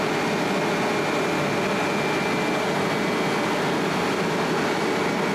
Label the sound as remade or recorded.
recorded